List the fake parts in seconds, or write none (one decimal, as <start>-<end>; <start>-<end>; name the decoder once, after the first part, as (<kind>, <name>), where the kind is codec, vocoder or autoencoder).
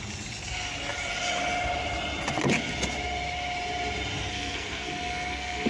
4.3-5.7 (codec, SNAC)